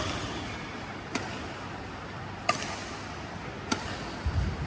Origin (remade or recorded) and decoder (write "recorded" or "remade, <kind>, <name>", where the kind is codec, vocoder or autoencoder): recorded